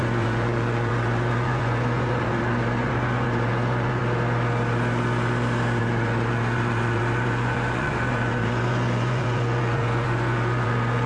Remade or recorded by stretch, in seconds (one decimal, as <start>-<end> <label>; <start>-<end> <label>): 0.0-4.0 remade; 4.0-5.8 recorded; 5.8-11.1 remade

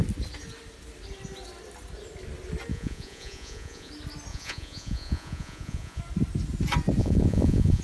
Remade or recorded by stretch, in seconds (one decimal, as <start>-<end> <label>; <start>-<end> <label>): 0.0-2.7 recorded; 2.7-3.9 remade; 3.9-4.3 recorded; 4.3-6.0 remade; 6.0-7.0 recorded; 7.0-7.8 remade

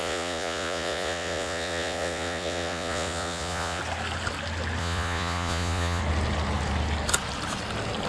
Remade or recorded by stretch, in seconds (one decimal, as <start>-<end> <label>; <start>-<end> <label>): 0.0-3.8 remade; 3.8-4.8 recorded; 4.8-6.0 remade; 6.0-8.1 recorded